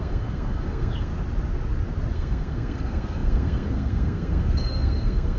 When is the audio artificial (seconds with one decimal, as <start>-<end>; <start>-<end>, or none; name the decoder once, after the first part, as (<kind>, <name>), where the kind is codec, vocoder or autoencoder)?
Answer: 0.0-1.1 (codec, SNAC); 2.1-5.4